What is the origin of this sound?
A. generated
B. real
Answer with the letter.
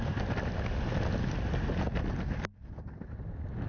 B